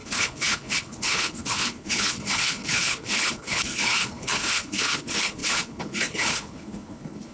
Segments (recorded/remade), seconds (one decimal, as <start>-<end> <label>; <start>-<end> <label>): 0.0-7.3 remade